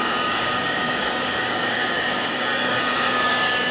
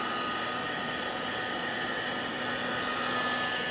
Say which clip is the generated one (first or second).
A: first